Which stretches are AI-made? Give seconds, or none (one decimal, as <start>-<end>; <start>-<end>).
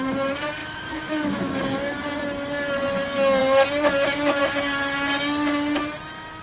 0.6-1.6